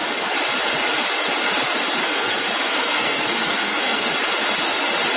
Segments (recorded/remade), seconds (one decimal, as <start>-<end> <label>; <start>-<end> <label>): 0.0-2.0 recorded; 2.0-4.1 remade; 4.1-5.2 recorded